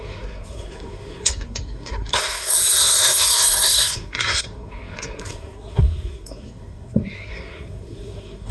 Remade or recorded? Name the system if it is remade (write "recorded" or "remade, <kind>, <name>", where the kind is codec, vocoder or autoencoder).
remade, codec, SNAC